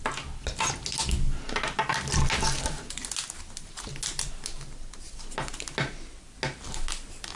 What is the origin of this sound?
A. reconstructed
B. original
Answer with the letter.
B